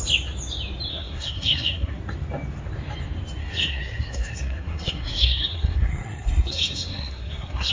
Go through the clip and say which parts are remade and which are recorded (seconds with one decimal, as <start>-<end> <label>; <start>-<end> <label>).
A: 0.0-0.9 recorded; 0.9-2.0 remade; 2.0-3.4 recorded; 3.4-7.7 remade